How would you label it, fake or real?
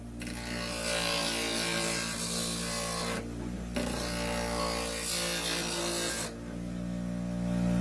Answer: real